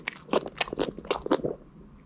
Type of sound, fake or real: real